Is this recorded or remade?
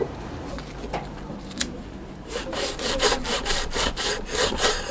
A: remade